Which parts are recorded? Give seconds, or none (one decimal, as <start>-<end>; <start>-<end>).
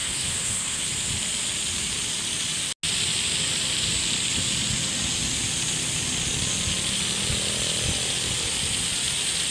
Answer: 0.9-9.5